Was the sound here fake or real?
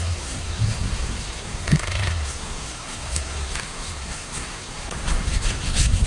fake